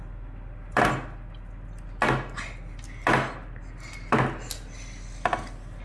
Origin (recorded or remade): recorded